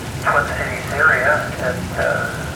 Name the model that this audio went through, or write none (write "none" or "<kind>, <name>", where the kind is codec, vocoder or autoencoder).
none